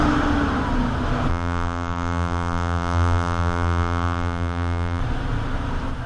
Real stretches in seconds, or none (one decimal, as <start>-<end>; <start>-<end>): 0.0-1.3; 5.0-6.1